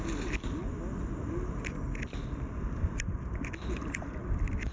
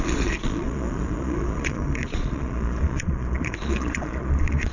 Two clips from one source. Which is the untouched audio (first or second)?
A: first